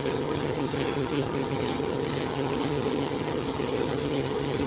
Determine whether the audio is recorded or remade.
remade